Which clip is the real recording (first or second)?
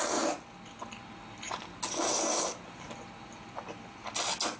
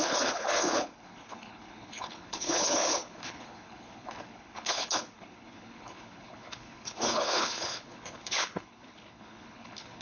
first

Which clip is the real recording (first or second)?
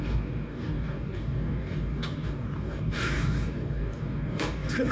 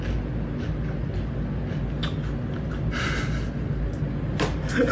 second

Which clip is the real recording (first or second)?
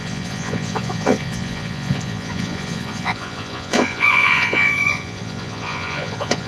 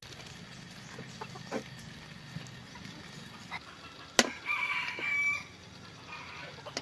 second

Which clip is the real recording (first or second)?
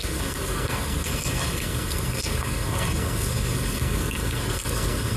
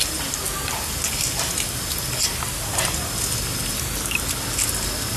second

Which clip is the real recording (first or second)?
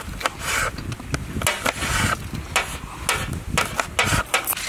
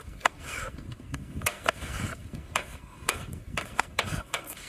first